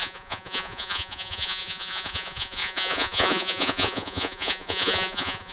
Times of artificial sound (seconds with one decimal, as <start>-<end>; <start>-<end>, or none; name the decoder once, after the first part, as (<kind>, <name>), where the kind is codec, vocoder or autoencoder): 0.0-5.5 (vocoder, Vocos)